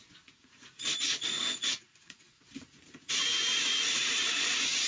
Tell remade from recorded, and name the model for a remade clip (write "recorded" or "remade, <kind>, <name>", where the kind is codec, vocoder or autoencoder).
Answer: remade, vocoder, Vocos